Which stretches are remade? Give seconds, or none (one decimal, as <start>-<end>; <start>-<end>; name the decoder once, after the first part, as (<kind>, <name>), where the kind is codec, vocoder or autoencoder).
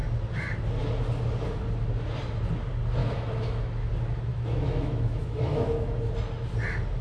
3.0-3.9 (autoencoder, DAC-VAE); 4.3-6.1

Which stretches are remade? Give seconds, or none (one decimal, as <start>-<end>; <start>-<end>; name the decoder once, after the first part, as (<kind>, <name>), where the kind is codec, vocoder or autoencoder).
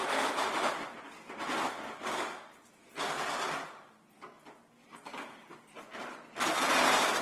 0.0-1.0 (vocoder, BigVGAN v2); 2.6-3.9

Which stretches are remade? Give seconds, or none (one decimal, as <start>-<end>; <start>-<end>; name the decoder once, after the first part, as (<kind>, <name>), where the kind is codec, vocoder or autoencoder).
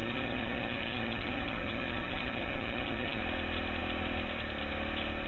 0.0-3.2 (vocoder, HiFi-GAN)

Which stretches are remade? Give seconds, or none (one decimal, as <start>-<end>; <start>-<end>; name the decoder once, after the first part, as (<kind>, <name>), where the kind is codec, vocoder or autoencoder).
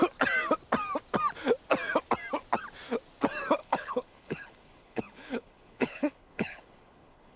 3.6-7.4 (codec, HILCodec)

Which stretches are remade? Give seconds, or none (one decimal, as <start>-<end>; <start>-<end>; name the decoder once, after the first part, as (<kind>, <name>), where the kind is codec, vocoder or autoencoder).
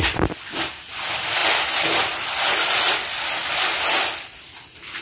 none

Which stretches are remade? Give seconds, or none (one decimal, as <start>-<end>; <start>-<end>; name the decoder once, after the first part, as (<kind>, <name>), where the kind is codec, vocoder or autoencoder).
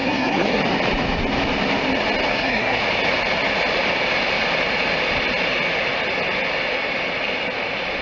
0.0-0.6 (codec, SNAC); 2.3-2.8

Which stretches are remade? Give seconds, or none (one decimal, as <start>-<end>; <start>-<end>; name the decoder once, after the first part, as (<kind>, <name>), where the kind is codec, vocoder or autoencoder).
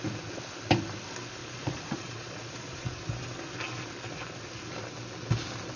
1.4-3.0 (vocoder, Vocos)